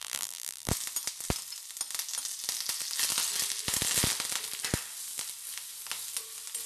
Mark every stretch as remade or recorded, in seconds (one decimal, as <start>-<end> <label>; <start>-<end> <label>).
0.0-0.7 remade; 0.7-6.7 recorded